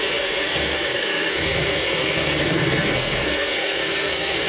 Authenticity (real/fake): fake